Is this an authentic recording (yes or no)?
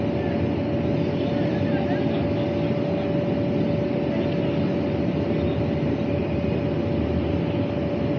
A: yes